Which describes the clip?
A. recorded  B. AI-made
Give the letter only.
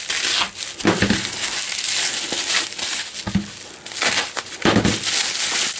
A